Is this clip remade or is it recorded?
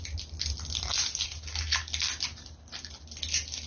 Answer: recorded